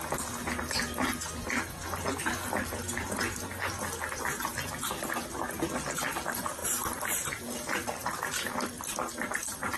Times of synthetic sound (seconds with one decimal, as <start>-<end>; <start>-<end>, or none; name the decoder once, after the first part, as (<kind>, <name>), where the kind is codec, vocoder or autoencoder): none